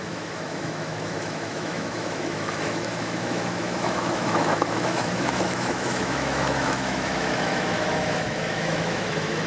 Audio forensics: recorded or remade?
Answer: remade